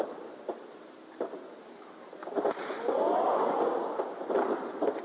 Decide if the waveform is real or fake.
real